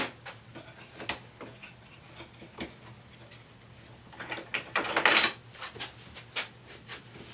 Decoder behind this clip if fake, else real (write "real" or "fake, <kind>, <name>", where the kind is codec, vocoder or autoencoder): real